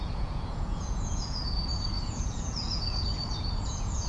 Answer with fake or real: fake